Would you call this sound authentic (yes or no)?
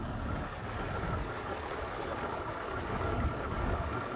no